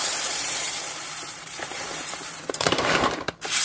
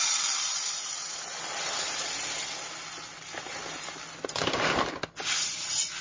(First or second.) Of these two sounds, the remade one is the first